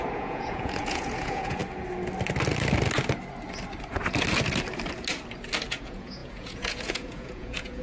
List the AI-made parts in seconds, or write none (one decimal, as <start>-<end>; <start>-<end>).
0.0-1.6; 5.7-7.8